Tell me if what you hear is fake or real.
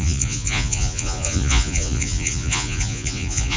fake